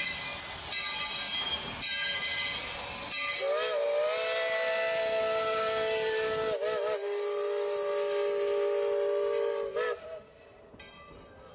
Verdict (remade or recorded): recorded